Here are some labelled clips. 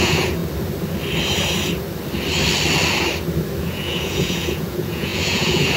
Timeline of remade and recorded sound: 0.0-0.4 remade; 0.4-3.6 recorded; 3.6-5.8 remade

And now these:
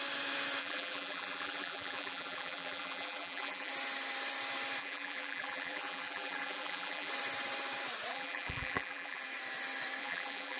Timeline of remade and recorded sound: 0.0-0.6 recorded; 0.6-3.7 remade; 3.7-4.8 recorded; 4.8-7.1 remade; 7.1-8.1 recorded; 8.1-9.2 remade; 9.2-10.0 recorded; 10.0-10.6 remade

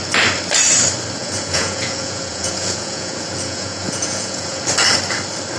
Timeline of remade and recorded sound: 0.0-1.2 recorded; 1.2-4.6 remade; 4.6-5.6 recorded

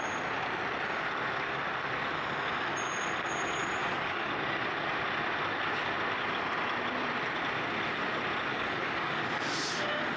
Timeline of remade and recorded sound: 0.0-3.8 recorded; 3.8-4.3 remade; 4.3-8.5 recorded; 8.5-9.2 remade; 9.2-10.2 recorded

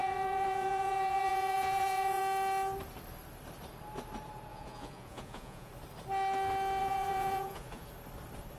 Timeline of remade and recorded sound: 0.0-2.2 remade; 2.2-4.5 recorded; 4.5-5.7 remade; 5.7-6.8 recorded; 6.8-7.9 remade; 7.9-8.6 recorded

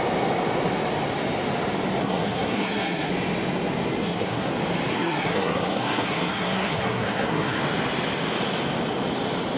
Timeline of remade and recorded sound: 0.0-2.0 recorded; 2.0-3.1 remade; 3.1-4.0 recorded; 4.0-4.5 remade; 4.5-4.9 recorded; 4.9-7.6 remade; 7.6-9.6 recorded

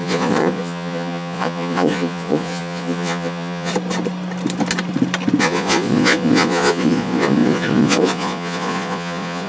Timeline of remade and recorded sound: 0.0-3.7 remade; 3.7-5.4 recorded; 5.4-9.5 remade